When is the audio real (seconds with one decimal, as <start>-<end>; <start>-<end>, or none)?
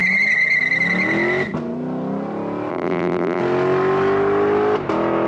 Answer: 0.0-2.7; 3.4-5.3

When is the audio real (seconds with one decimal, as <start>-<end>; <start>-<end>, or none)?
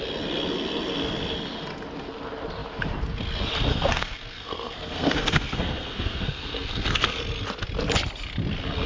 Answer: 0.0-3.7; 7.2-8.9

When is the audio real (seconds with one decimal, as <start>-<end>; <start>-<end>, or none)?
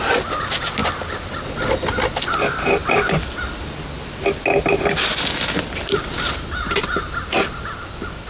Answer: 0.0-8.3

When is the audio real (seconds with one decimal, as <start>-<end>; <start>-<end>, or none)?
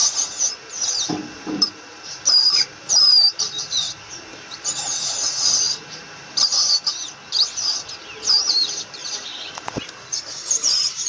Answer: 0.0-1.1; 6.5-8.0